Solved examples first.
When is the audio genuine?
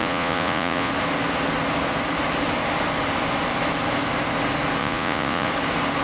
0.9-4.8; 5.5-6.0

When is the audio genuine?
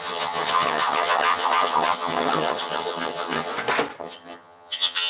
3.5-4.0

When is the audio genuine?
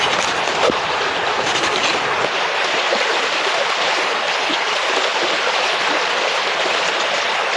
1.3-5.9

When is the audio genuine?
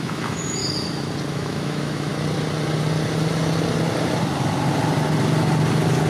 0.6-1.3; 2.1-6.1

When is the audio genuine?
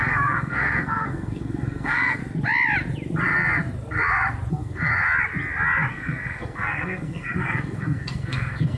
2.2-4.5; 4.9-5.9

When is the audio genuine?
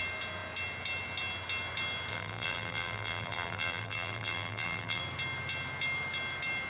0.0-2.1; 5.0-6.7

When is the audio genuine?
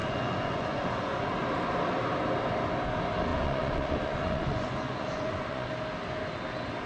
1.3-3.3; 5.7-6.9